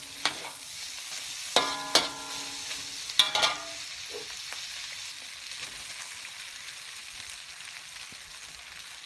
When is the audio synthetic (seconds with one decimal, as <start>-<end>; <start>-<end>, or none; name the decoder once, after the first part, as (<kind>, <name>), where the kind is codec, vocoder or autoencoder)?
none